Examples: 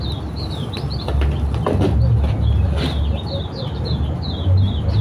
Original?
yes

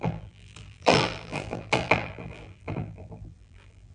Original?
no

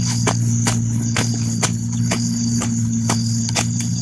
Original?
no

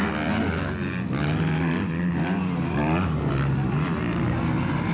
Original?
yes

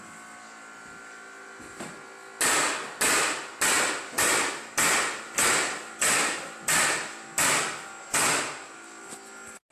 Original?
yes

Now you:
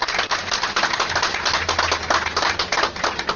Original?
yes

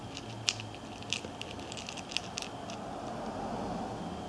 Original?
yes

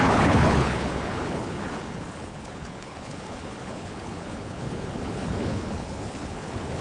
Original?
no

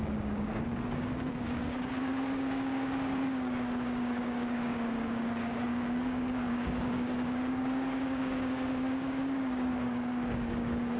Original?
no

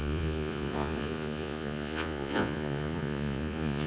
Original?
no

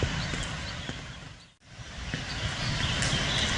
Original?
yes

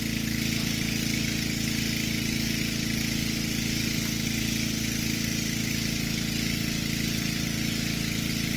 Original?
yes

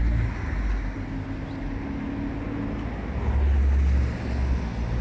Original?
yes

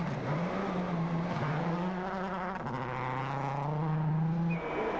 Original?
yes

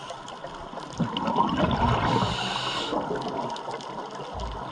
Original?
yes